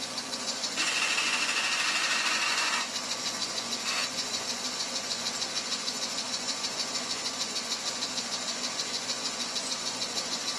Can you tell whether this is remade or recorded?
remade